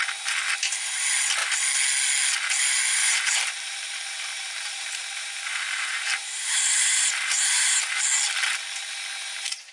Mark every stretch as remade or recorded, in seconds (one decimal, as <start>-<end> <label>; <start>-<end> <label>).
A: 0.0-3.0 recorded; 3.0-8.0 remade; 8.0-9.7 recorded